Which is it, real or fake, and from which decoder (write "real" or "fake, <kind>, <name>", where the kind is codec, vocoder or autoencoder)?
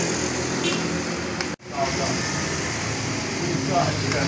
real